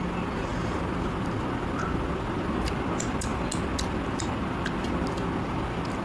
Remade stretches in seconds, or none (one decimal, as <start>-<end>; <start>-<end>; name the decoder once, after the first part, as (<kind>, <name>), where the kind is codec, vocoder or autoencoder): none